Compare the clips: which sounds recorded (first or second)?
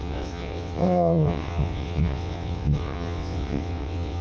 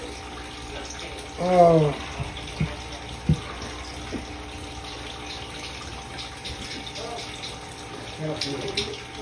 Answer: second